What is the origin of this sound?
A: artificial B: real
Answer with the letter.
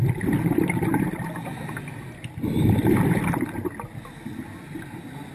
B